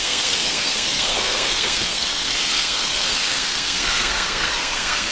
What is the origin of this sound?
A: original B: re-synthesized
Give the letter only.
B